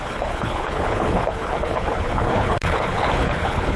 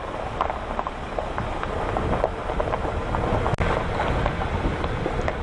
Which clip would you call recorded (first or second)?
second